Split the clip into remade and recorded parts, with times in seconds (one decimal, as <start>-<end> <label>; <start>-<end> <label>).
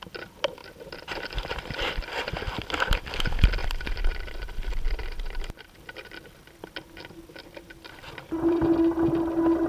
0.0-0.6 recorded; 0.6-2.2 remade; 2.2-3.6 recorded; 3.6-8.6 remade; 8.6-9.7 recorded